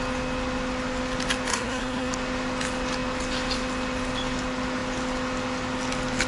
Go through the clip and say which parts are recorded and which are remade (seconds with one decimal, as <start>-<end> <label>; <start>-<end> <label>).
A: 0.0-1.5 recorded; 1.5-2.1 remade; 2.1-6.3 recorded